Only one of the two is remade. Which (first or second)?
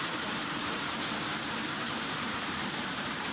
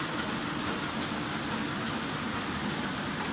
first